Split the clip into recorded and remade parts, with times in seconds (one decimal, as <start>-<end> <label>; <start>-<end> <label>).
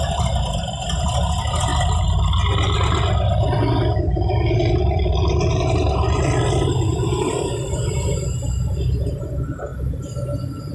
0.0-6.9 recorded; 6.9-7.9 remade; 7.9-10.7 recorded